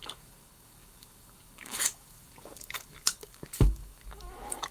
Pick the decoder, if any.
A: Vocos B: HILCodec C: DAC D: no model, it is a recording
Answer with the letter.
C